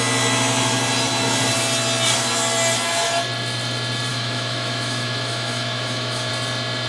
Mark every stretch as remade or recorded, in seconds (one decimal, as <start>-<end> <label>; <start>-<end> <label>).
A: 0.0-4.1 recorded; 4.1-6.3 remade; 6.3-6.9 recorded